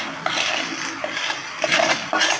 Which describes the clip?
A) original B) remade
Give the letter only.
B